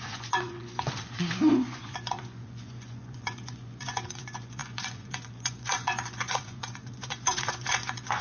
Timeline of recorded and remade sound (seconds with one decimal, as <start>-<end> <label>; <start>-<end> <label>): 0.0-8.2 remade